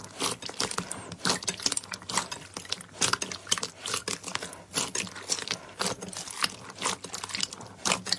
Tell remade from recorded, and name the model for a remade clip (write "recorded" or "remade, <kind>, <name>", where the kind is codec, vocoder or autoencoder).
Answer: recorded